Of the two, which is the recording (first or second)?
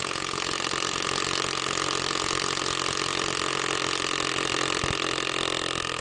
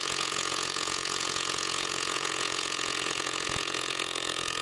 first